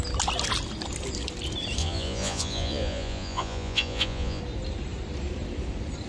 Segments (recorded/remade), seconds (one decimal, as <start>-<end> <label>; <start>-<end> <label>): 0.0-1.8 recorded; 1.8-4.4 remade; 4.4-6.1 recorded